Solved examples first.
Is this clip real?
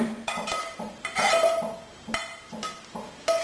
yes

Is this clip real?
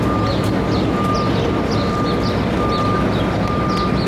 yes